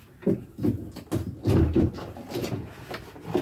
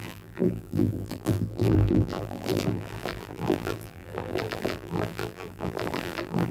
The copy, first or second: second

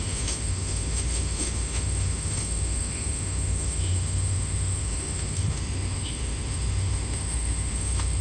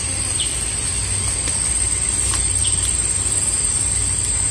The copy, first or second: first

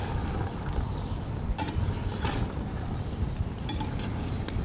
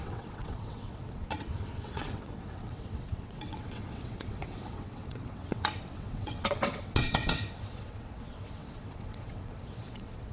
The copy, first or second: second